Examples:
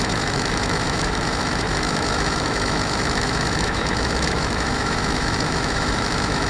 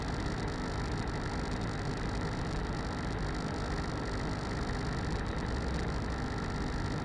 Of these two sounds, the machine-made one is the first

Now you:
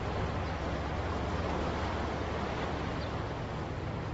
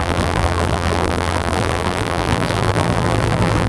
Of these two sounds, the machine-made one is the second